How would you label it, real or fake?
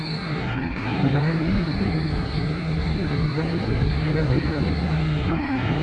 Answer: fake